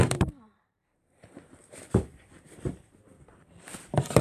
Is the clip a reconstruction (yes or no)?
yes